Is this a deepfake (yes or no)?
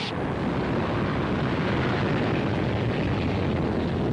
no